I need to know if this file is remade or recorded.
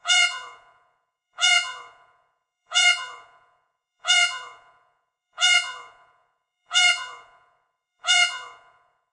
remade